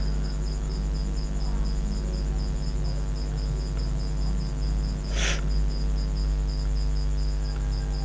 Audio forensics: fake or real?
real